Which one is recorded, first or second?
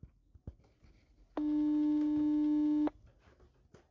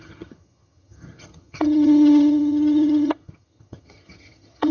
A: first